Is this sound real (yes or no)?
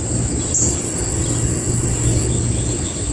yes